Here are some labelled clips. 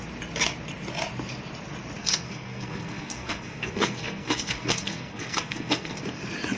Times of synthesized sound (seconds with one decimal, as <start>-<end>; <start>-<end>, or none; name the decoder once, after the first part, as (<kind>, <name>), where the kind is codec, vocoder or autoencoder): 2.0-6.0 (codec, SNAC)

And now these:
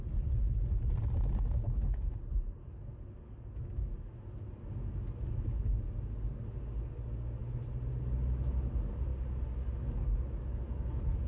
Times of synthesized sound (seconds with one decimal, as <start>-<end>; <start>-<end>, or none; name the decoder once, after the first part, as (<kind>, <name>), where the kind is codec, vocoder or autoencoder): none

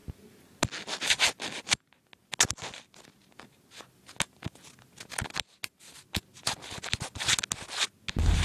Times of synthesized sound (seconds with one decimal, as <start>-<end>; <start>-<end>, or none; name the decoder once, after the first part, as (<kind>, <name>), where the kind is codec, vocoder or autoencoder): none

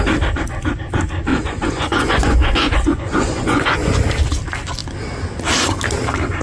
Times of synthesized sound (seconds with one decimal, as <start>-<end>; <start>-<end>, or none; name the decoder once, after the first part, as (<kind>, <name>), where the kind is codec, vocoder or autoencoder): 1.3-4.0 (vocoder, Vocos)